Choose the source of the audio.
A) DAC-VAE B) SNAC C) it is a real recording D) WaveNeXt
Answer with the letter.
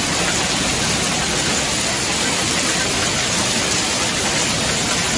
C